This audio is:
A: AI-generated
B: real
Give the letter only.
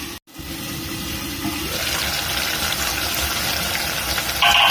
B